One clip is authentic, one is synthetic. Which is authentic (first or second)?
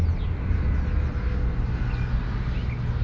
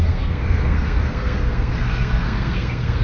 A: first